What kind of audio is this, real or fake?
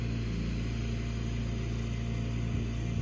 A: real